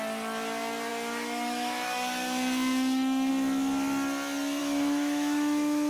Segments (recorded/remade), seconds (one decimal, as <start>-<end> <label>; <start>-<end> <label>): 0.0-0.9 recorded; 0.9-3.3 remade; 3.3-4.6 recorded; 4.6-5.9 remade